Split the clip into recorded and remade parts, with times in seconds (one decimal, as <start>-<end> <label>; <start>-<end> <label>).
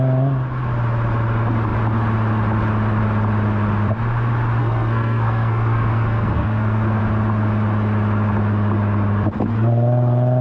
0.0-4.6 recorded; 4.6-7.0 remade; 7.0-10.4 recorded